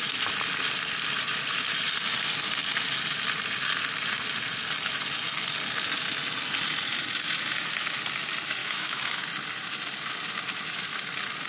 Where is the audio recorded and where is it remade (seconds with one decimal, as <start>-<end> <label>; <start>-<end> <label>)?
0.0-8.6 recorded; 8.6-9.2 remade; 9.2-11.5 recorded